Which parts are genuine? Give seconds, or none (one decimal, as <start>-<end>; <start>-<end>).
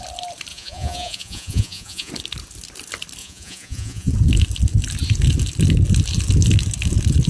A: 0.0-0.5; 2.1-3.2; 4.1-7.3